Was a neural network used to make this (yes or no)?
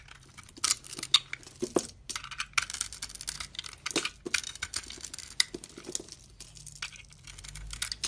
no